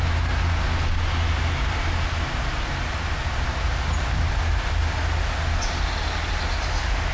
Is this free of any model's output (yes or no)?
yes